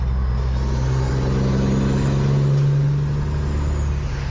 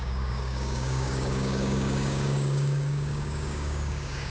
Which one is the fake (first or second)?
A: second